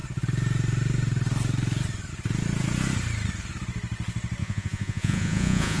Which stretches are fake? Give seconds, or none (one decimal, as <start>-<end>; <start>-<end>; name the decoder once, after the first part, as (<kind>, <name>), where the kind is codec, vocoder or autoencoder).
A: 4.4-5.8 (vocoder, Vocos)